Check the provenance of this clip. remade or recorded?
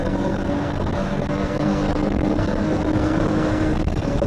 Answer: remade